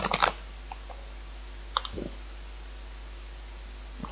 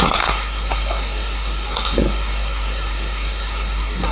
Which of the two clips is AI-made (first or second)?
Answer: second